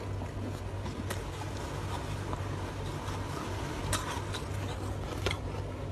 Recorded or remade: recorded